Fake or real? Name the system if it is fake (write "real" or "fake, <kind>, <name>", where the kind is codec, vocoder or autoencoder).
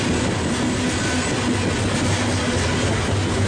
real